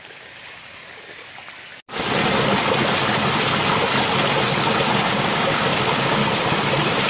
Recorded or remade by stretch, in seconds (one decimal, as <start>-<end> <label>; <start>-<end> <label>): 0.0-0.8 remade; 0.8-5.1 recorded; 5.1-6.2 remade; 6.2-7.1 recorded